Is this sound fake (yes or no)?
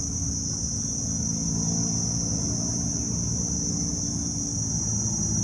no